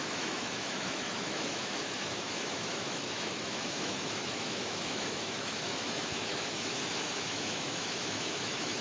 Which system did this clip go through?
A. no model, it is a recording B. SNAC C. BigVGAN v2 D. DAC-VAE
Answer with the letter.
D